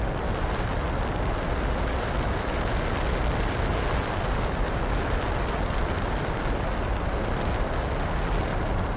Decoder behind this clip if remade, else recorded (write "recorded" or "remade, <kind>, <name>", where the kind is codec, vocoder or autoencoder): recorded